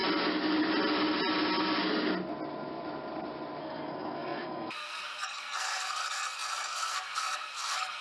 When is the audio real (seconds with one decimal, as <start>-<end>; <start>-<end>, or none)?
0.0-3.6